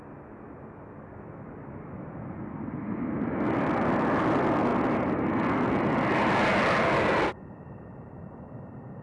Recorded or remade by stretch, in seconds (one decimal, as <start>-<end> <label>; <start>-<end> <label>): 0.0-9.0 recorded